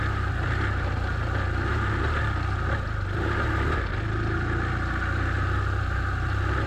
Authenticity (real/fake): real